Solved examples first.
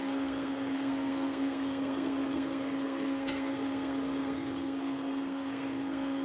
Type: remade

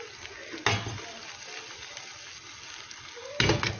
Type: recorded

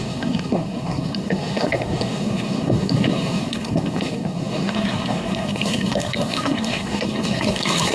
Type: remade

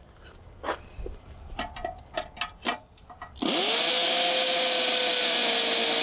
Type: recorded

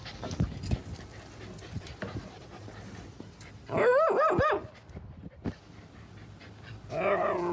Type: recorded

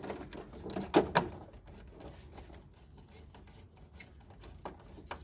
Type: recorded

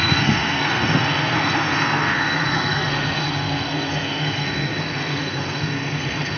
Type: remade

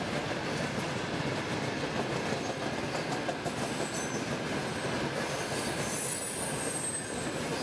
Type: recorded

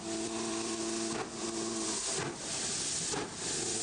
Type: recorded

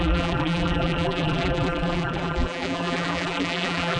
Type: remade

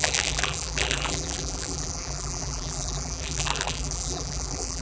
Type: remade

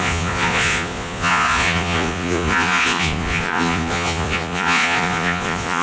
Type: remade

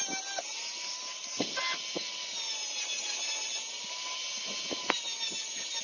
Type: recorded